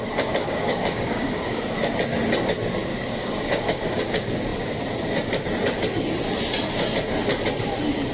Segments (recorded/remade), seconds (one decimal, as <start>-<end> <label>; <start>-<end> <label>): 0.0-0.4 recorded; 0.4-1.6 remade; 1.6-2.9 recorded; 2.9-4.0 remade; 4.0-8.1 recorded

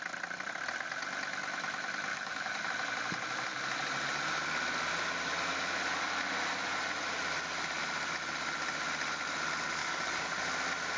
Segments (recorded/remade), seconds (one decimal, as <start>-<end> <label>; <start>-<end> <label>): 0.0-2.1 recorded; 2.1-2.7 remade; 2.7-9.8 recorded; 9.8-10.4 remade; 10.4-11.0 recorded

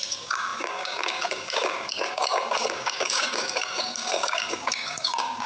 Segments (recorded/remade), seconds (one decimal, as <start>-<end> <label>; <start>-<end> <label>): 0.0-5.5 remade

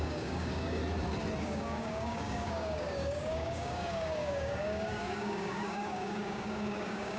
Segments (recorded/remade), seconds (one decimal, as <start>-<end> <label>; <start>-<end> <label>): 0.0-0.8 remade; 0.8-1.4 recorded; 1.4-7.2 remade

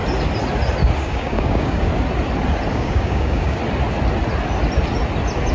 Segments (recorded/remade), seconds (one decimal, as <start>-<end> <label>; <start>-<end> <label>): 0.0-1.0 recorded; 1.0-1.9 remade; 1.9-2.7 recorded; 2.7-3.6 remade; 3.6-5.5 recorded

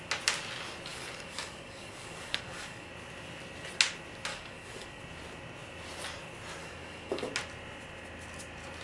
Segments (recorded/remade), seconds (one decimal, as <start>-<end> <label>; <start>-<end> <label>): 0.0-0.9 recorded; 0.9-2.9 remade; 2.9-4.3 recorded; 4.3-5.0 remade; 5.0-6.6 recorded; 6.6-7.3 remade; 7.3-8.8 recorded

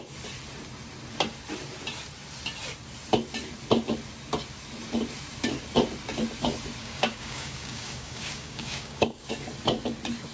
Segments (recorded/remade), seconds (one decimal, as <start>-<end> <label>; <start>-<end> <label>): 0.0-6.8 recorded; 6.8-9.3 remade; 9.3-10.3 recorded